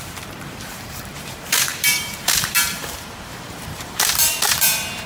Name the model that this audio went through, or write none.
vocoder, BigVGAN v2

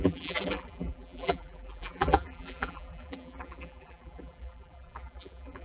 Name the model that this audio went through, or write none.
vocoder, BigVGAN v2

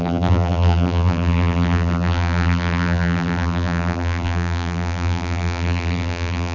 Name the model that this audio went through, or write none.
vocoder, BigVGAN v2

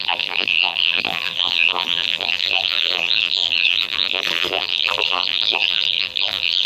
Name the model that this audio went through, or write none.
vocoder, BigVGAN v2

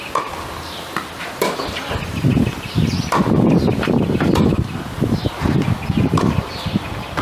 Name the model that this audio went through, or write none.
none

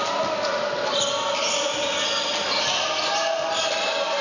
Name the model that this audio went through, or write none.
none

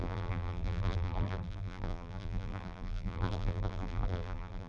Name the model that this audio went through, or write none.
vocoder, BigVGAN v2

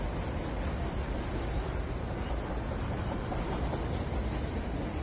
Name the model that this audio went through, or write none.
none